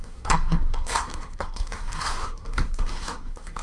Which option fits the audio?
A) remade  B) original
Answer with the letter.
A